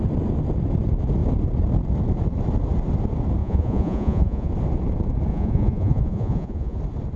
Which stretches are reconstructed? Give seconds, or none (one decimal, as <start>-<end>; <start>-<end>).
3.4-4.5; 5.3-6.8

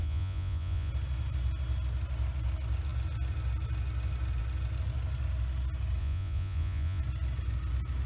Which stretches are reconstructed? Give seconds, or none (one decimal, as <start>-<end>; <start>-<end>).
0.0-0.9; 6.0-7.0

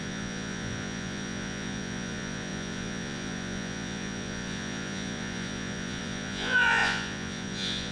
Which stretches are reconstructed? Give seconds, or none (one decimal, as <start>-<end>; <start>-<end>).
0.0-7.9

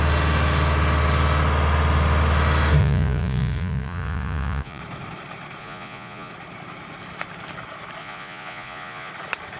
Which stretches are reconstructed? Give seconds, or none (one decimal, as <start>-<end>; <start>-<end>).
2.8-4.8; 5.6-6.3; 8.0-9.1

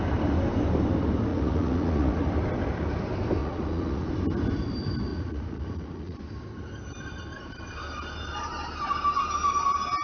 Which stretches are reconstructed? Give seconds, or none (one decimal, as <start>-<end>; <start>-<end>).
1.3-2.3; 3.4-4.1; 5.1-6.2

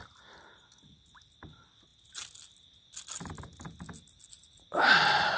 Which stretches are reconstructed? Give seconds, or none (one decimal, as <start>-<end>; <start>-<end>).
none

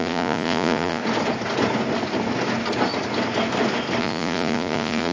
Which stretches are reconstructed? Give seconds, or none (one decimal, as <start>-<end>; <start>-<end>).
0.0-1.0; 4.0-5.1

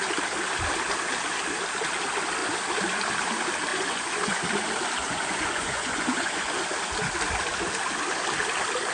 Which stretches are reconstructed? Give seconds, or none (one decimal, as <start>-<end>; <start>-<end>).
3.7-4.4; 5.0-6.6